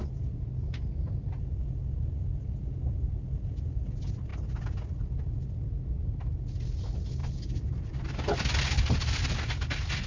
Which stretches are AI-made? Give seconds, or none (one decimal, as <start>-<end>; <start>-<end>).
7.2-8.6